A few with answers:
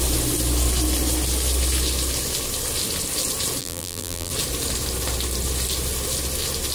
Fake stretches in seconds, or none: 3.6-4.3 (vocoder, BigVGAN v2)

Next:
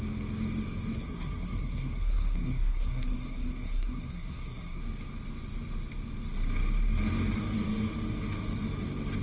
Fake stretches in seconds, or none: 1.0-4.8 (codec, SNAC)

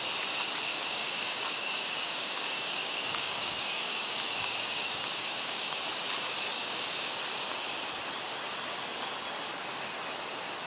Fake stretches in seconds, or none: 0.7-5.8 (codec, DAC); 6.5-7.2

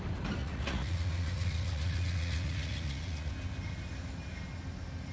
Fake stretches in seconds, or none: 0.4-3.3 (vocoder, Vocos)

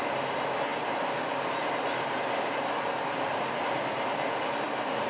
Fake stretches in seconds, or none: none

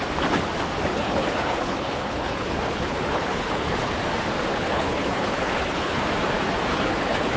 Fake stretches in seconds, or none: 0.9-3.9 (codec, HILCodec); 4.5-6.0; 6.7-7.4

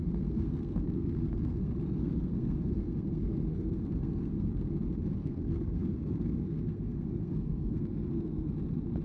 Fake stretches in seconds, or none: 0.0-4.8 (codec, SNAC); 5.2-8.5

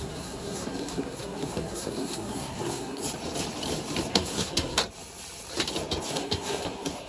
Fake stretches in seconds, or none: 0.0-3.0 (codec, SNAC); 4.1-4.8; 6.1-7.1